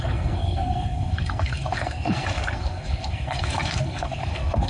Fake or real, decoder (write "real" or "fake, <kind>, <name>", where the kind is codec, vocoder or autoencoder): fake, codec, SNAC